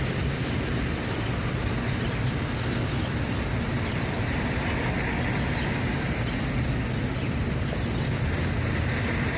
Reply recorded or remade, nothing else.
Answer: remade